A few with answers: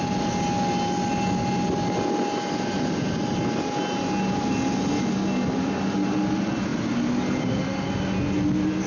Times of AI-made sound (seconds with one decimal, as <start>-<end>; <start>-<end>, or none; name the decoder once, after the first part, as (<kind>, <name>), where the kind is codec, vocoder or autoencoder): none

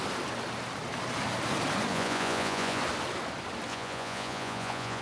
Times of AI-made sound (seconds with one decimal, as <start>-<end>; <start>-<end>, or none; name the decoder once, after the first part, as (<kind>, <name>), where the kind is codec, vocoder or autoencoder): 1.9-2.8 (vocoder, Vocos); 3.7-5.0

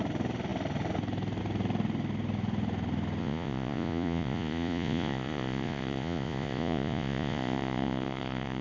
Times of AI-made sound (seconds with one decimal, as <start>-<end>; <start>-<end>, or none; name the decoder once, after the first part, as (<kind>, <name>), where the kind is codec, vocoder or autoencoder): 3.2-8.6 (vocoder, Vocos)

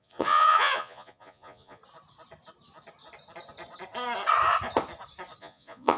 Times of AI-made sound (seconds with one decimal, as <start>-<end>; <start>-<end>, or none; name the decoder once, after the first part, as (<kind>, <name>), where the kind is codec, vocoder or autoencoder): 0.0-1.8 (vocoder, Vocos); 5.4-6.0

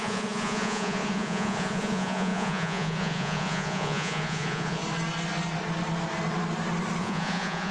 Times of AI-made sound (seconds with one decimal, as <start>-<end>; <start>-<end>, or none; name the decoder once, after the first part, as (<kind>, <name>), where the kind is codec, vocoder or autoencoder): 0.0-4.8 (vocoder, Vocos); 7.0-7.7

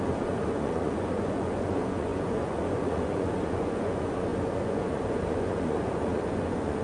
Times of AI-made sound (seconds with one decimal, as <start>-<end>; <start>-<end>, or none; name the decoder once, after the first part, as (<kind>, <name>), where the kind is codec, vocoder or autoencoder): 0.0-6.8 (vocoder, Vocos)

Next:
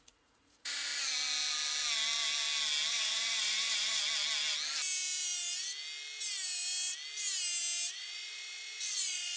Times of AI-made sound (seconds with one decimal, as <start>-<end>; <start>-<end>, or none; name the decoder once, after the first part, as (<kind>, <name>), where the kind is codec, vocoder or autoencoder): 0.0-0.9 (vocoder, Vocos); 2.9-4.0; 7.9-9.4

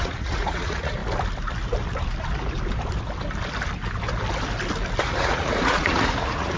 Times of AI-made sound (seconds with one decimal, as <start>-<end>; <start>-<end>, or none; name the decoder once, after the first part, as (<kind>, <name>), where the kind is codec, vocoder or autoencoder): 0.0-1.0 (vocoder, Vocos); 5.0-6.6